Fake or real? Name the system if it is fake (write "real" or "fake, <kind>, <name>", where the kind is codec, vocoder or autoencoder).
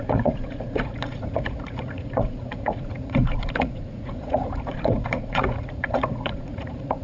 fake, vocoder, Vocos